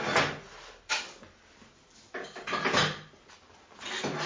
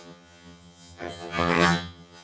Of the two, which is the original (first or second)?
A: first